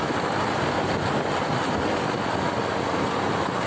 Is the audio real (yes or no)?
yes